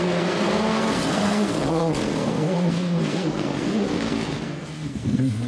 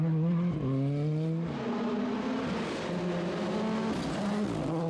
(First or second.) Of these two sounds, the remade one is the first